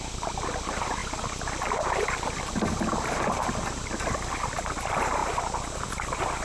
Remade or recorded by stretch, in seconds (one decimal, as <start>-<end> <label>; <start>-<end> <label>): 0.0-6.4 recorded